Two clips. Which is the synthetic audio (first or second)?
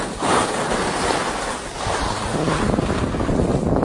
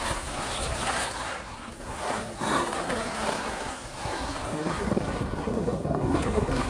second